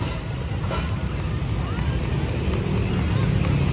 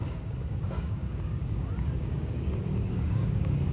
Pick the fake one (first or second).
second